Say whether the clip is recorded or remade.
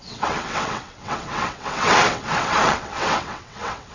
remade